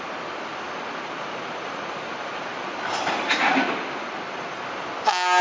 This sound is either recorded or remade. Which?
recorded